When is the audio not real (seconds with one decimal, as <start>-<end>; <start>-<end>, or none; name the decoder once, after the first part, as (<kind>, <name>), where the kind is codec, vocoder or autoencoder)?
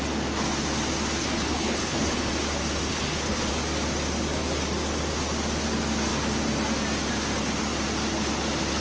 1.2-2.3 (codec, HILCodec); 2.9-3.5